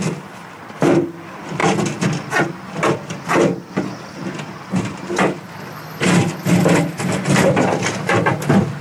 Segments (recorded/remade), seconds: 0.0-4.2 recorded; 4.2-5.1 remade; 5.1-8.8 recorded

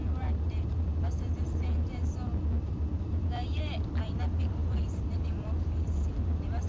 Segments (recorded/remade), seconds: 0.0-6.7 remade

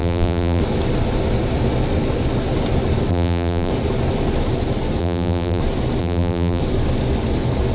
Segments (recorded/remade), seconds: 0.0-0.6 remade; 0.6-3.1 recorded; 3.1-3.7 remade; 3.7-5.0 recorded; 5.0-5.6 remade; 5.6-6.0 recorded; 6.0-6.6 remade; 6.6-7.7 recorded

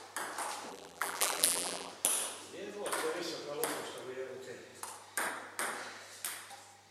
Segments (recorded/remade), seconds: 0.0-0.7 recorded; 0.7-1.9 remade; 1.9-6.9 recorded